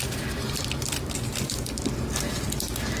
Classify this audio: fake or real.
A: real